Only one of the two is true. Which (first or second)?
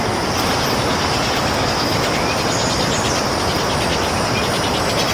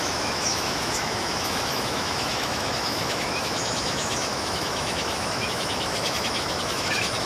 first